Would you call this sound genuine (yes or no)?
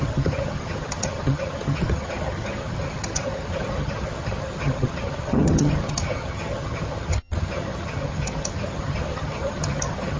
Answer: no